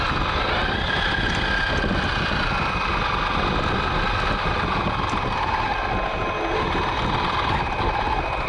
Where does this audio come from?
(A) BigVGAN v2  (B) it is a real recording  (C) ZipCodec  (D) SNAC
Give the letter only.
B